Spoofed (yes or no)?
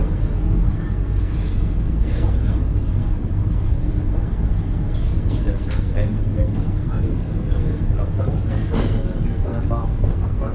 yes